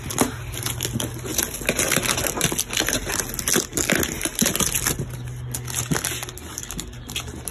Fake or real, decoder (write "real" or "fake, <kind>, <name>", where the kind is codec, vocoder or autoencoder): real